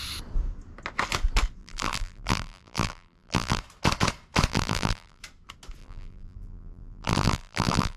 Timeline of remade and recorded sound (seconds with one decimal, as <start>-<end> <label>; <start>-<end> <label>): 0.0-1.6 recorded; 1.6-3.6 remade; 3.6-4.5 recorded; 4.5-5.2 remade; 5.2-5.8 recorded; 5.8-8.0 remade